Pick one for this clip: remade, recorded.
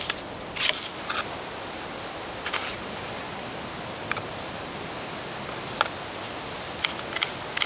recorded